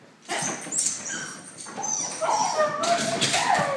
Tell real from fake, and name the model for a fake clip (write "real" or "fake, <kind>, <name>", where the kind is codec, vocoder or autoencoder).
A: real